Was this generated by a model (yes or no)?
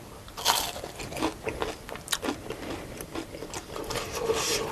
no